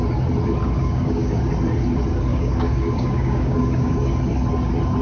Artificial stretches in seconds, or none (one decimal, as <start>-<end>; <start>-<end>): 0.6-1.4; 2.3-3.9